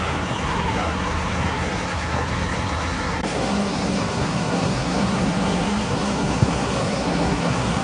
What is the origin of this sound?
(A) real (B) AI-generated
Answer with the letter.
B